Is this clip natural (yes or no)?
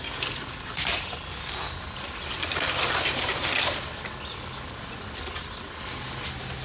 yes